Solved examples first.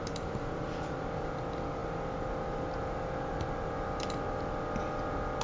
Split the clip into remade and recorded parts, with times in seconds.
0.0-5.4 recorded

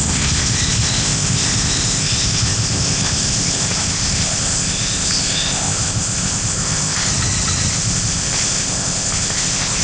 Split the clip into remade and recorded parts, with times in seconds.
0.0-7.1 remade; 7.1-7.7 recorded; 7.7-9.8 remade

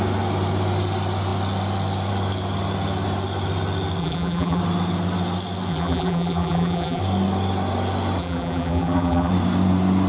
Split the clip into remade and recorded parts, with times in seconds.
0.0-4.0 recorded; 4.0-4.6 remade; 4.6-5.7 recorded; 5.7-7.0 remade; 7.0-8.2 recorded; 8.2-9.3 remade; 9.3-10.1 recorded

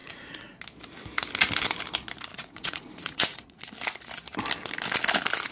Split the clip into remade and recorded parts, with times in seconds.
0.0-0.6 remade; 0.6-2.3 recorded; 2.3-3.6 remade; 3.6-5.5 recorded

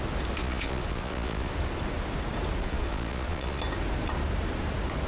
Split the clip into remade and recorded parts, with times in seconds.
0.0-0.4 recorded; 0.4-1.5 remade; 1.5-2.6 recorded; 2.6-3.6 remade; 3.6-5.1 recorded